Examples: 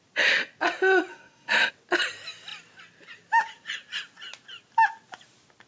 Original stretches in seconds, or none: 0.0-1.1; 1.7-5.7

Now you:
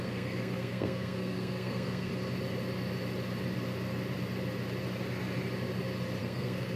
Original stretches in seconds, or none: 2.1-6.2